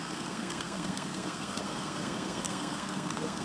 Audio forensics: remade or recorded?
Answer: remade